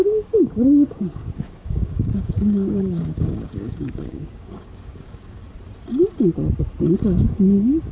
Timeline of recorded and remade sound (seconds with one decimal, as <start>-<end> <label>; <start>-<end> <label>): 0.0-5.4 remade; 5.4-7.2 recorded; 7.2-7.9 remade